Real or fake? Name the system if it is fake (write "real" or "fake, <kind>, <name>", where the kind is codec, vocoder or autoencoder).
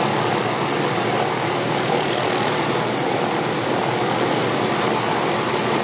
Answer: real